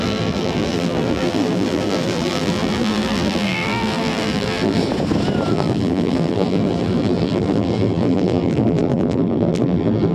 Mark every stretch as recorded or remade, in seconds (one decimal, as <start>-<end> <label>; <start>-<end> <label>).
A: 0.0-4.8 remade; 4.8-5.5 recorded; 5.5-10.1 remade